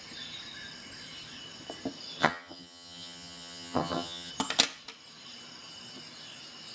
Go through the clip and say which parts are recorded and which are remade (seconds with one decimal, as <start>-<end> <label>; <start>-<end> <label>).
0.0-2.2 recorded; 2.2-4.3 remade; 4.3-6.7 recorded